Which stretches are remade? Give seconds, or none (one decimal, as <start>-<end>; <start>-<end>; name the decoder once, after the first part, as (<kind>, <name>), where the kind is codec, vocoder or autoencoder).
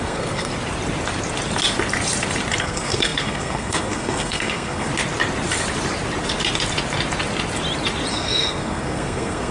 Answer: 0.0-0.5 (codec, SNAC); 2.6-4.9; 8.1-9.5